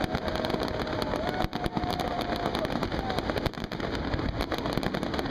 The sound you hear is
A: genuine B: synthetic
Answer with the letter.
A